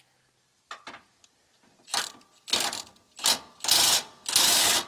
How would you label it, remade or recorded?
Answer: recorded